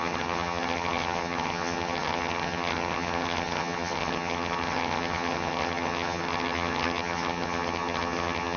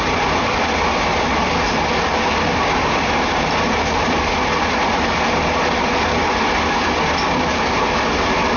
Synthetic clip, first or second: first